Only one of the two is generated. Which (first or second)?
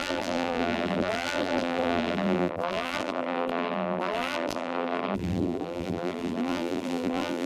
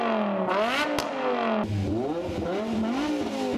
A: first